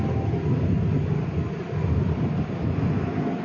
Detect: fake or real real